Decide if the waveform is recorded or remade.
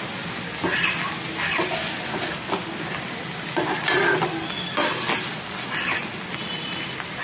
recorded